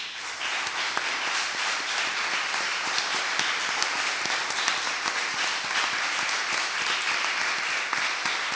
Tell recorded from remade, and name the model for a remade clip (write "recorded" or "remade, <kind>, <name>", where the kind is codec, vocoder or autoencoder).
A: remade, vocoder, BigVGAN v2